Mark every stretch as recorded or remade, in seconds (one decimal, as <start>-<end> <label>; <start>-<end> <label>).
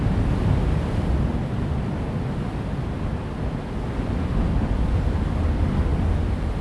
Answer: 0.0-6.6 recorded